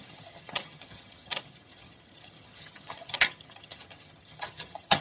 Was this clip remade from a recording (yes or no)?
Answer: yes